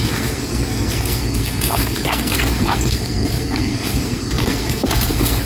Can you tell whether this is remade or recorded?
remade